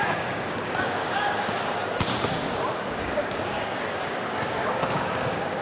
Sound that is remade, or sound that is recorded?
remade